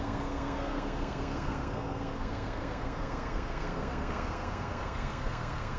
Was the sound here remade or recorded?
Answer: remade